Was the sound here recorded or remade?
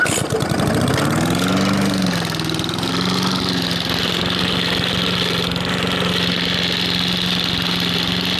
recorded